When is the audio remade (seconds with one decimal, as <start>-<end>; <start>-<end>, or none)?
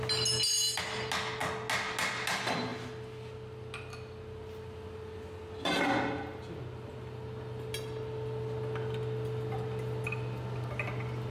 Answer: none